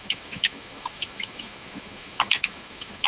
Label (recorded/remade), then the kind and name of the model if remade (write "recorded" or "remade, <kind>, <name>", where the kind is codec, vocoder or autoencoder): remade, autoencoder, DAC-VAE